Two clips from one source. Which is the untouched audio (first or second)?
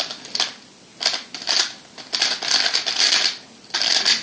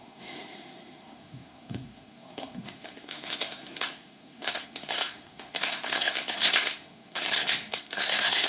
first